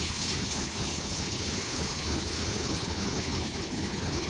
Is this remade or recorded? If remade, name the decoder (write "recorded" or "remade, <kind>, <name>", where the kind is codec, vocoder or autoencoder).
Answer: remade, codec, HILCodec